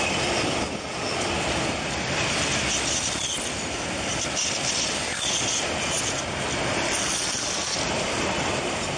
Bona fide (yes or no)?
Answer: yes